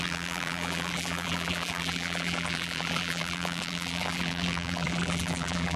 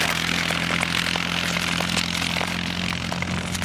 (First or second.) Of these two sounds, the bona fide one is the second